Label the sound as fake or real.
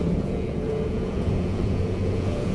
fake